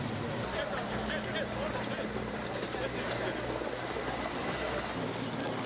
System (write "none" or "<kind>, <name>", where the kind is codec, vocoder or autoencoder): none